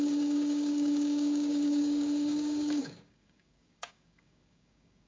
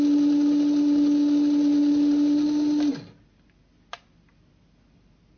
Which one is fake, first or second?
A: first